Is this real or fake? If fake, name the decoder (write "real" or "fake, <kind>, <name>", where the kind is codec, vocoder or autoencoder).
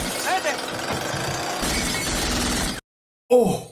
real